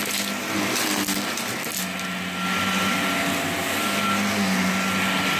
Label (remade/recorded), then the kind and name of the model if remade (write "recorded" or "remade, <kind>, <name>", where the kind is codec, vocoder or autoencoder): recorded